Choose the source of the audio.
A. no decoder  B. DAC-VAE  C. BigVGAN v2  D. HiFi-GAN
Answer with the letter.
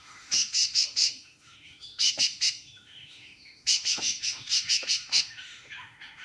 B